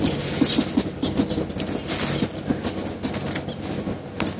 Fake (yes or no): no